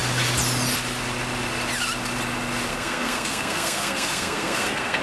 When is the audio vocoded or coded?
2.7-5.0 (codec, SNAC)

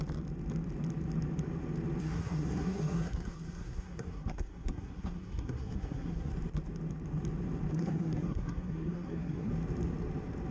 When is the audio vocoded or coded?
2.0-6.3 (codec, SNAC); 7.7-9.5

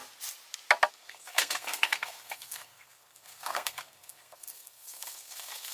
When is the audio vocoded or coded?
0.9-5.7 (codec, SNAC)

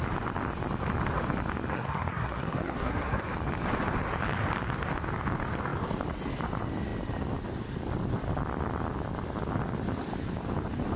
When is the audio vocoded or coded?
1.7-3.2 (codec, SNAC)

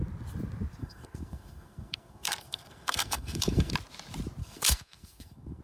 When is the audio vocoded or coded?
0.8-3.7 (codec, SNAC); 4.4-5.6

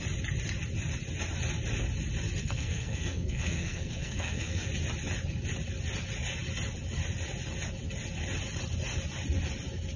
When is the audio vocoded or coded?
2.4-4.7 (codec, SNAC)

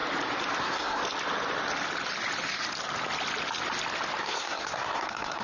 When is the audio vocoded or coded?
0.6-1.0 (codec, SNAC); 4.2-5.4